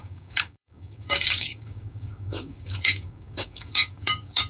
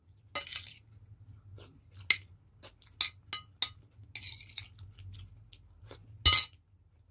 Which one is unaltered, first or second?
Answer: second